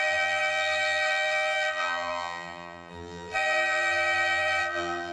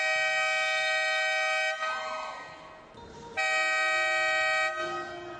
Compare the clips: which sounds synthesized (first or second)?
first